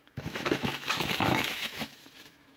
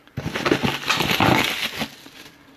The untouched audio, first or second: second